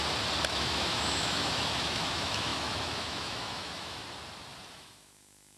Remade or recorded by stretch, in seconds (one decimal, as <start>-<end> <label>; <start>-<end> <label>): 0.0-0.5 recorded; 0.5-4.0 remade; 4.0-4.7 recorded; 4.7-5.6 remade